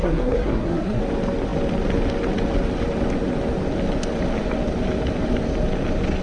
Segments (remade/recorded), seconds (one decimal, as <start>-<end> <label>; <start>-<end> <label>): 0.0-1.0 remade; 1.0-6.2 recorded